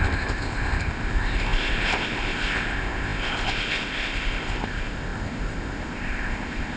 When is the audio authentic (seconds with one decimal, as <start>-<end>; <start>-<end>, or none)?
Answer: none